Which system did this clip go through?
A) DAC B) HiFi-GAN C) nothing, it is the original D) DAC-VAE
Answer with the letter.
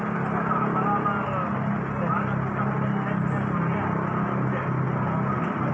C